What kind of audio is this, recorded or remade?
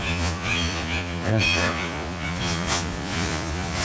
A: remade